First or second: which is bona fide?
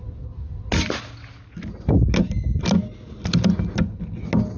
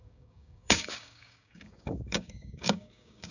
first